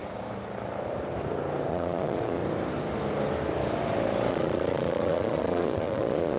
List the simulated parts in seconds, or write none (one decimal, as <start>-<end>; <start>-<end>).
1.7-2.4; 4.3-6.4